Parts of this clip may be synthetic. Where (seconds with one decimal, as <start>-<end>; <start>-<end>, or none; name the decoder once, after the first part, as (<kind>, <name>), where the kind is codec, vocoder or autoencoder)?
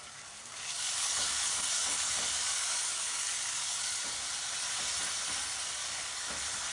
0.0-4.0 (codec, DAC); 5.8-6.3